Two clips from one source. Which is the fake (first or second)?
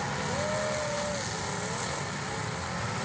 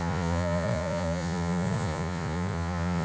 second